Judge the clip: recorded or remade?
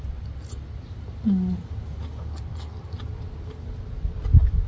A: recorded